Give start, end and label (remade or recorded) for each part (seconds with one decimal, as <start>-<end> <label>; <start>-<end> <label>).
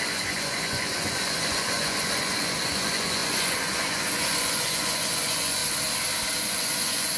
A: 0.0-5.6 remade; 5.6-6.4 recorded; 6.4-7.2 remade